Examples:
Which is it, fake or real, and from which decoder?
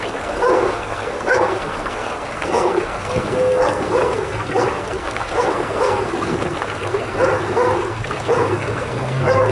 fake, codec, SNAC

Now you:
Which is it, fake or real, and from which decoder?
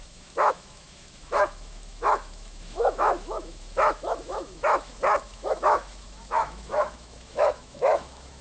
fake, autoencoder, DAC-VAE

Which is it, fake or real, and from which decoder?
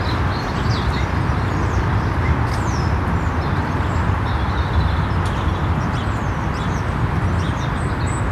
real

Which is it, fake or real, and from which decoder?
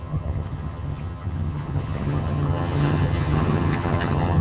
fake, vocoder, HiFi-GAN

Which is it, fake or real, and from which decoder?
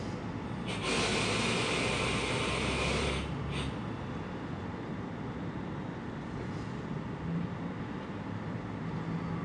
real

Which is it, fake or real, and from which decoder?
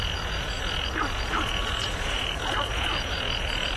fake, vocoder, Vocos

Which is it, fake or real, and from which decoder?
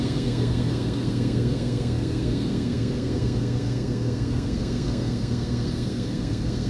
fake, codec, SNAC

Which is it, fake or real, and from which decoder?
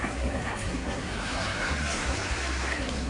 fake, codec, SNAC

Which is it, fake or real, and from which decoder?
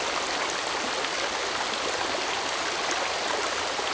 real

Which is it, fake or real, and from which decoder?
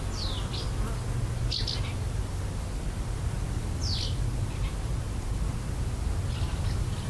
real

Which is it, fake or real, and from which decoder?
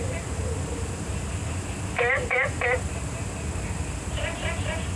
real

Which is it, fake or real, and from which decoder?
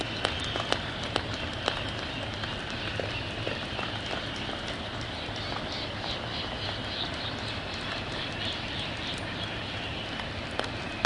real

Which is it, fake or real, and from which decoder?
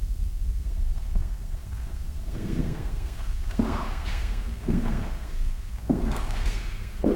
fake, codec, SNAC